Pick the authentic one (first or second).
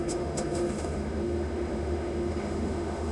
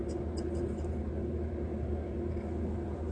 second